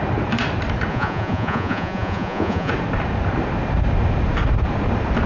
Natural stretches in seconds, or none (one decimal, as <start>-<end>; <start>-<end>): 0.0-0.9; 2.7-5.3